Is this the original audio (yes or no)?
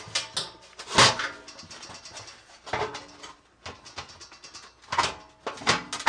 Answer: yes